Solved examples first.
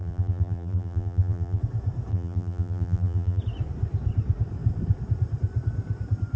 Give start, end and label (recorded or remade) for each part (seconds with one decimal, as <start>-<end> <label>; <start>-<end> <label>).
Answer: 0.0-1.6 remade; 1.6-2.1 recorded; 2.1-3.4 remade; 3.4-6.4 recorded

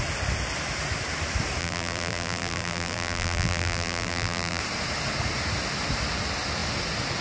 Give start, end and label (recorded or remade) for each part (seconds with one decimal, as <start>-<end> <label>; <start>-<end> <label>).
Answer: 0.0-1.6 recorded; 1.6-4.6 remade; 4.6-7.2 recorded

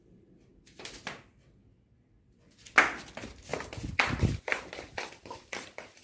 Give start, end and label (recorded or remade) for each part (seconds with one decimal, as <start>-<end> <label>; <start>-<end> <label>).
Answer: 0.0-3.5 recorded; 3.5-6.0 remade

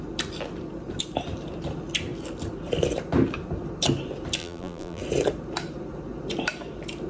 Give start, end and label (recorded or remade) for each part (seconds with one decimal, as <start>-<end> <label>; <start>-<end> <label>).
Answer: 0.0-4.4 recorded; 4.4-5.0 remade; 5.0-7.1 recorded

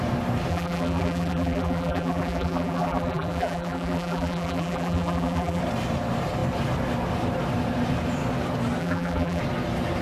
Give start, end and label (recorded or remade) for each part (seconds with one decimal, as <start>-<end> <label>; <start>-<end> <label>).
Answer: 0.0-0.5 recorded; 0.5-5.6 remade; 5.6-8.8 recorded; 8.8-9.4 remade; 9.4-10.0 recorded

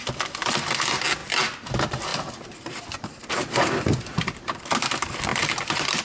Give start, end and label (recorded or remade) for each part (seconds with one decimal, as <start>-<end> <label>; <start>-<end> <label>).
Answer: 0.0-1.2 remade; 1.2-1.7 recorded; 1.7-6.0 remade